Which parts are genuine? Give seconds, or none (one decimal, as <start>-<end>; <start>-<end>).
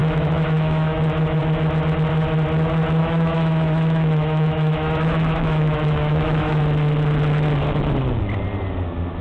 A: 1.4-3.0; 6.6-9.2